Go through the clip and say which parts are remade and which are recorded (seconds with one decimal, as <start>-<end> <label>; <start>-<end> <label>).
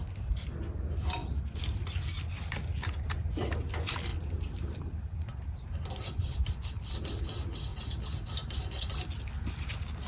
0.0-1.2 recorded; 1.2-2.7 remade; 2.7-4.1 recorded; 4.1-7.1 remade; 7.1-10.1 recorded